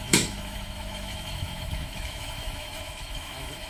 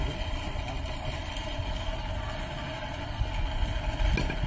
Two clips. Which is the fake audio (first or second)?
first